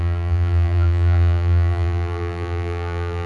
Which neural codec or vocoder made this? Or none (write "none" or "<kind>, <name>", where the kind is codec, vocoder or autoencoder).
vocoder, BigVGAN v2